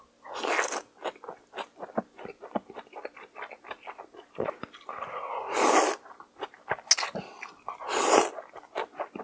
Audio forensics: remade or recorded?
recorded